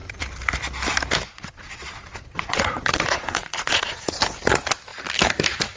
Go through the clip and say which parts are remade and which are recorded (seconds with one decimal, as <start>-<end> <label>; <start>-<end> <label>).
0.0-1.3 recorded; 1.3-4.2 remade; 4.2-5.8 recorded